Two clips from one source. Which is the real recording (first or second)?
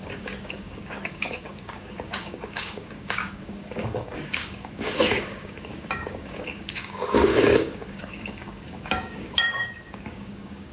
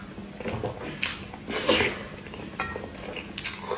second